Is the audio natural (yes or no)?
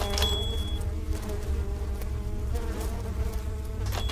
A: yes